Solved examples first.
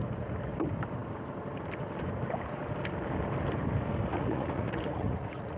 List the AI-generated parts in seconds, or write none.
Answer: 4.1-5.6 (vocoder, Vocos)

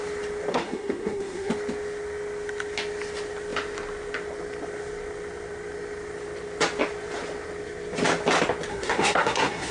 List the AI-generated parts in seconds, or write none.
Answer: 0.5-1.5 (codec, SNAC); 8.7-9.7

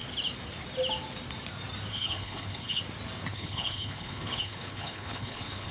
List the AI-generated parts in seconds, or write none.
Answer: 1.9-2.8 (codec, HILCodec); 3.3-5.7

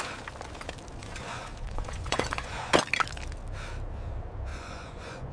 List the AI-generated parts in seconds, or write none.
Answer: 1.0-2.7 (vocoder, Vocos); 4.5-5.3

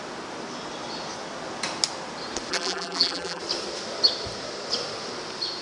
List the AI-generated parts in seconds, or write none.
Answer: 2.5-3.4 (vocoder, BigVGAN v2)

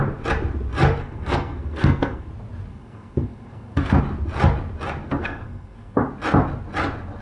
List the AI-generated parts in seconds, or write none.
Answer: 1.0-2.3 (codec, SNAC); 2.7-4.0; 5.0-6.0